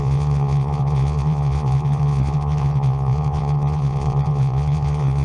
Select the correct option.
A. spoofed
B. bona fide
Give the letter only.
A